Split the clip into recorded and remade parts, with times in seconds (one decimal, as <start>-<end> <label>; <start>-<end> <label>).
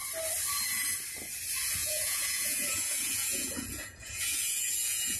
0.0-1.8 recorded; 1.8-5.2 remade